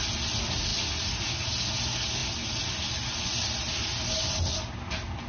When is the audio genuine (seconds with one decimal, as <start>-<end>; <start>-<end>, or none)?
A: 0.0-5.3